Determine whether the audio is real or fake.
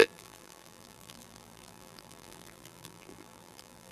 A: fake